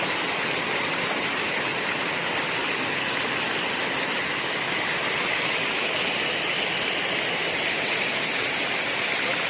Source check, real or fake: real